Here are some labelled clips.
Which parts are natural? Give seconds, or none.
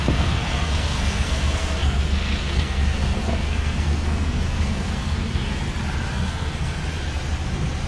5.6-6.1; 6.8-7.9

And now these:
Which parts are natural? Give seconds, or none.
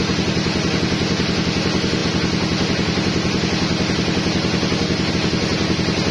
0.0-6.1